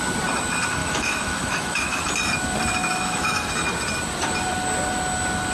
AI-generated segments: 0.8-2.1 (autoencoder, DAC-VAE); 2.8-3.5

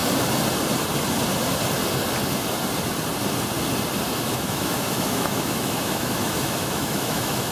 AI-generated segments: 4.2-7.5 (autoencoder, DAC-VAE)